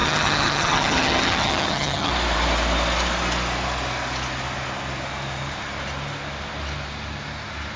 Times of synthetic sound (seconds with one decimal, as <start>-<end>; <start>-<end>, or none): 0.0-2.1